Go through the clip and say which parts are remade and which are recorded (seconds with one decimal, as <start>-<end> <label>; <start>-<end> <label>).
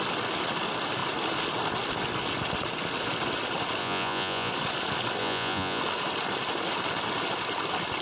0.0-3.8 recorded; 3.8-4.5 remade; 4.5-5.2 recorded; 5.2-5.8 remade; 5.8-8.0 recorded